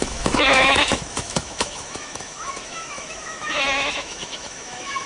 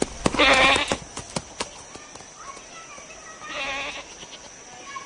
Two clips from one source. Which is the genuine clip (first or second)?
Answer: second